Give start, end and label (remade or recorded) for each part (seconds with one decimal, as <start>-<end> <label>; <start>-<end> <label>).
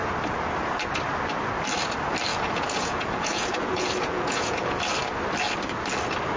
0.0-2.3 recorded; 2.3-4.8 remade; 4.8-6.4 recorded